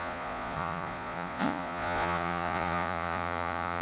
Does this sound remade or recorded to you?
remade